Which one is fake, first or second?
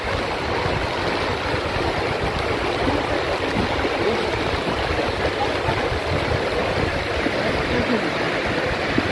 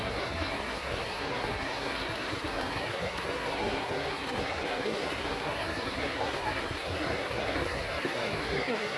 second